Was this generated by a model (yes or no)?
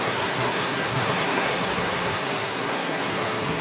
yes